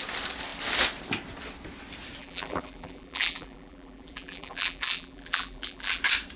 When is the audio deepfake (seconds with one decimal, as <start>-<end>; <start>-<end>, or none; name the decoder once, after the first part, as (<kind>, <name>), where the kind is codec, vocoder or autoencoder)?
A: 2.2-6.0 (vocoder, BigVGAN v2)